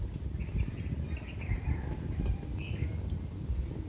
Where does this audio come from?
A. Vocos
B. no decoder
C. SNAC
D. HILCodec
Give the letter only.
B